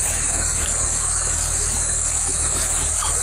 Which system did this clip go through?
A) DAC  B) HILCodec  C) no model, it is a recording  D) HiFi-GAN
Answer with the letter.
A